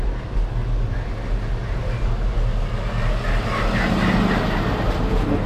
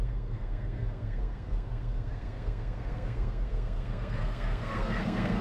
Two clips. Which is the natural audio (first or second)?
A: first